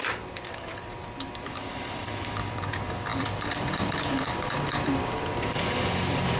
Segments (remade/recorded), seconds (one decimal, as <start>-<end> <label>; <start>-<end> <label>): 0.0-6.4 remade